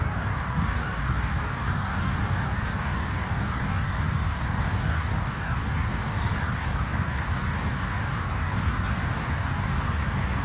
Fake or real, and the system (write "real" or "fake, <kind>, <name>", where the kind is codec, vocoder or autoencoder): fake, codec, DAC